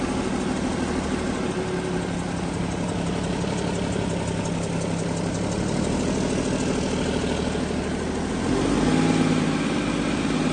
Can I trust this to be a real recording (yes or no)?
yes